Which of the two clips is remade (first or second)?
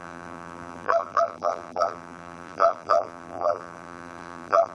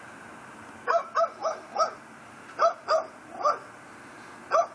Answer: first